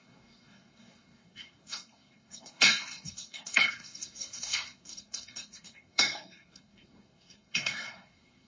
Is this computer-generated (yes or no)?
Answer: yes